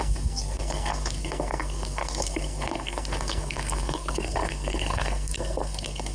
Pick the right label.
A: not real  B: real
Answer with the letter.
A